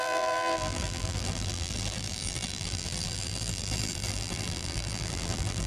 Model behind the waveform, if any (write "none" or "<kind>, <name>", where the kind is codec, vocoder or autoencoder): vocoder, BigVGAN v2